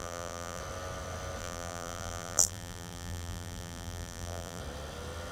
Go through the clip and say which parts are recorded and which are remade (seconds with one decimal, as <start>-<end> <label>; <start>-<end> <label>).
0.0-0.6 remade; 0.6-1.4 recorded; 1.4-4.6 remade; 4.6-5.3 recorded